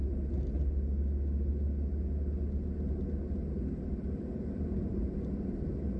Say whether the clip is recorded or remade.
recorded